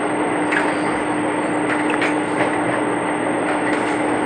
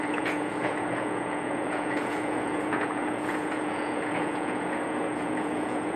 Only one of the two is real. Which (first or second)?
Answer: first